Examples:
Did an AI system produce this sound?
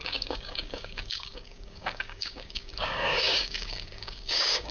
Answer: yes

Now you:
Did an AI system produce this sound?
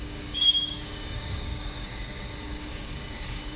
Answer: yes